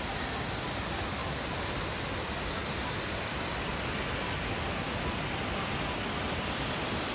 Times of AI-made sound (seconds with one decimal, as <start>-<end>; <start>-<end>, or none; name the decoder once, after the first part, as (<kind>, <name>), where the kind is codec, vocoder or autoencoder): none